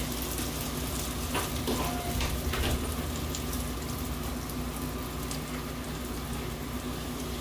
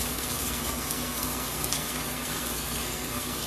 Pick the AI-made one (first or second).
second